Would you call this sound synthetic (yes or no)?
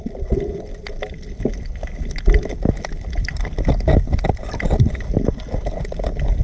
no